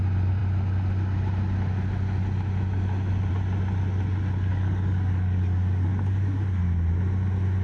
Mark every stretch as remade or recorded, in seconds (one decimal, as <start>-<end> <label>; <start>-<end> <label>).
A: 0.0-4.5 recorded; 4.5-6.6 remade; 6.6-7.6 recorded